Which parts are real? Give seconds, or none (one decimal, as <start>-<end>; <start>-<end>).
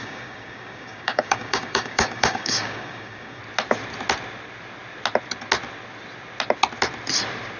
3.4-7.6